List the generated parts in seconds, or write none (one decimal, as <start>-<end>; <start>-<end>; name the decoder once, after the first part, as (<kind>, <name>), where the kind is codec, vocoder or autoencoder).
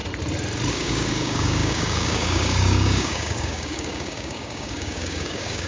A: 0.7-5.7 (codec, DAC)